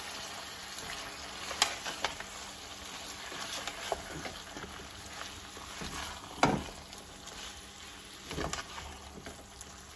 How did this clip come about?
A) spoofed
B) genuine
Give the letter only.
B